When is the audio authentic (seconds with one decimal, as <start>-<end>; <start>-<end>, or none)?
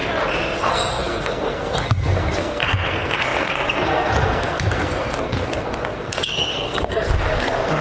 0.0-0.6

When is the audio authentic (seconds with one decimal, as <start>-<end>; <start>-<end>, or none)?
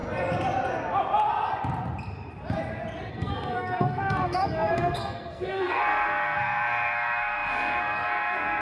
0.0-3.1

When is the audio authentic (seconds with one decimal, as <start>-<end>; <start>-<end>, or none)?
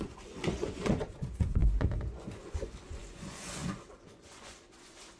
none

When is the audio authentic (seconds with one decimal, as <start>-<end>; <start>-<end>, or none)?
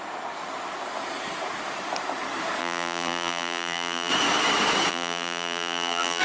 0.0-2.6; 4.1-4.9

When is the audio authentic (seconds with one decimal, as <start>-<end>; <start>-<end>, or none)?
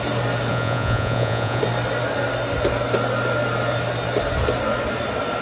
0.0-0.5; 1.6-5.4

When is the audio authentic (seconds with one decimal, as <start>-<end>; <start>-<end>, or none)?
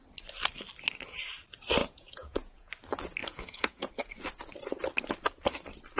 0.0-1.8; 2.7-3.2; 3.9-6.0